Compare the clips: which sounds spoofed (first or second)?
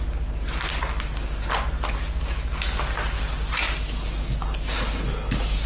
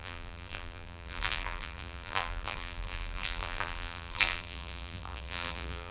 second